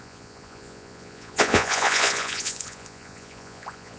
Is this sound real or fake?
fake